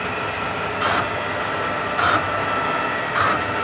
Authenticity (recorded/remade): recorded